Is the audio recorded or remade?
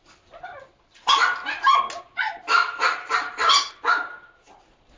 recorded